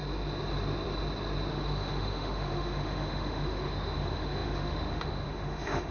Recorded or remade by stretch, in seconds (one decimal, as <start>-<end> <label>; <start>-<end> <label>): 0.0-1.5 recorded; 1.5-5.9 remade